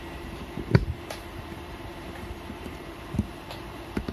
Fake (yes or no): yes